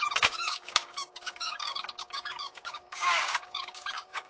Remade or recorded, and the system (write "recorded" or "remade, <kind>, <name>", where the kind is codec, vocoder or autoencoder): remade, codec, DAC